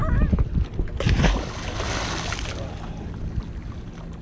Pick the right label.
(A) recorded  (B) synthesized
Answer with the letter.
A